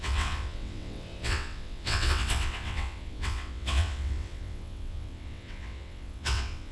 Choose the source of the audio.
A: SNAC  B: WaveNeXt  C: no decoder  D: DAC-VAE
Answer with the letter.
B